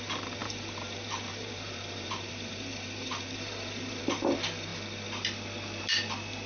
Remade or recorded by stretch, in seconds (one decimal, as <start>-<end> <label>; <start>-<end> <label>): 0.0-0.4 recorded; 0.4-4.0 remade; 4.0-6.5 recorded